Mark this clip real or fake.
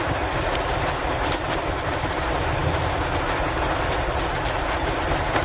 real